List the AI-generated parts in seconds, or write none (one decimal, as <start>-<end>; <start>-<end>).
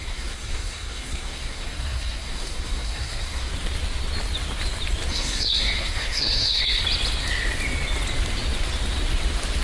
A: 0.0-3.5; 5.1-6.8